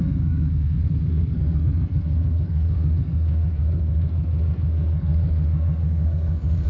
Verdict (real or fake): fake